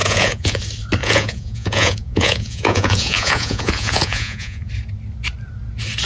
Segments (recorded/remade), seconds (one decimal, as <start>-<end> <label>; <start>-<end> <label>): 0.0-0.6 remade; 0.6-1.0 recorded; 1.0-4.7 remade; 4.7-6.1 recorded